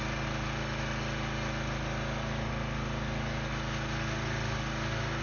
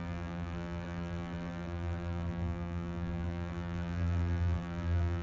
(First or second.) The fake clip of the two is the second